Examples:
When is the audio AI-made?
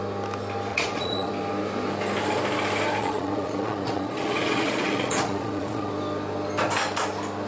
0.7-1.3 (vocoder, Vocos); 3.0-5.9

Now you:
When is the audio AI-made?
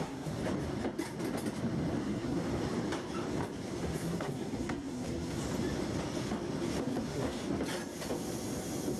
0.0-0.4 (codec, SNAC); 2.0-2.4; 3.8-5.4; 6.8-7.4